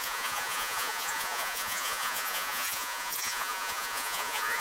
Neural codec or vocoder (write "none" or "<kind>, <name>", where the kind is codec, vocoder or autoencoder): vocoder, Vocos